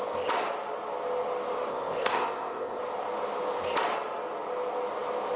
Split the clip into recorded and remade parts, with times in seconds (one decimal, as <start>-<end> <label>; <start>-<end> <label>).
0.0-1.7 recorded; 1.7-2.8 remade; 2.8-5.4 recorded